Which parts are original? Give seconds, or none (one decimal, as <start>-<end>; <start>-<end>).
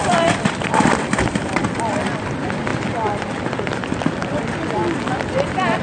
1.5-5.8